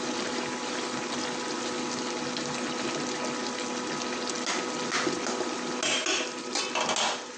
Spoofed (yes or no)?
no